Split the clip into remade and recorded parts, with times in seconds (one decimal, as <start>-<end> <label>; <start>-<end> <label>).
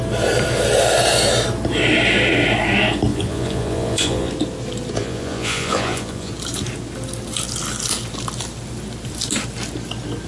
0.0-3.1 recorded; 3.1-4.3 remade; 4.3-5.0 recorded; 5.0-6.3 remade; 6.3-10.3 recorded